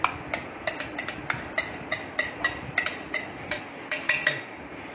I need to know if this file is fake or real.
real